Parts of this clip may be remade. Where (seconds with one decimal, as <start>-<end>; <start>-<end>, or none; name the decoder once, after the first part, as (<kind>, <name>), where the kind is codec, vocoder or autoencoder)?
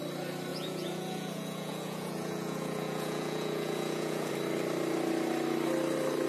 0.5-4.3 (vocoder, Vocos)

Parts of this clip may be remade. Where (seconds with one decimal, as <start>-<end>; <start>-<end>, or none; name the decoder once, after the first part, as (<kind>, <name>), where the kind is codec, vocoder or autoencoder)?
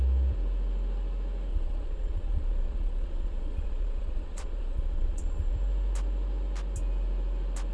1.5-5.5 (vocoder, Vocos)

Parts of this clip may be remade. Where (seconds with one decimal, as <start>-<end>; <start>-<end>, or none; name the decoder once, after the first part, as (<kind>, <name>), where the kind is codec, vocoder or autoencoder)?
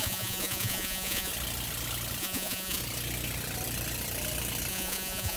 0.0-1.3 (vocoder, Vocos); 2.2-2.8; 4.7-5.4